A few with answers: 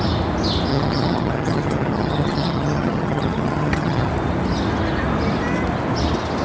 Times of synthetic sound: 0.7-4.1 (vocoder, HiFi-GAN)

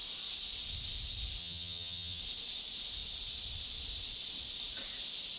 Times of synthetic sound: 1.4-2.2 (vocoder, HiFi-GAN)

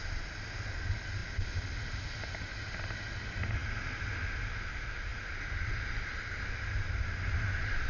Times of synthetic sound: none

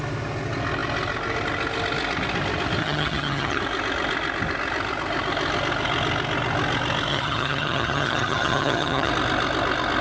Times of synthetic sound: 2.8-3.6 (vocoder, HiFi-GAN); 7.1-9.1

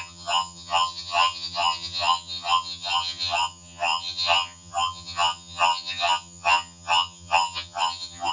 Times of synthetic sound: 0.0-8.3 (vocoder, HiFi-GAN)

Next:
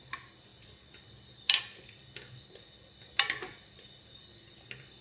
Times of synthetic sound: none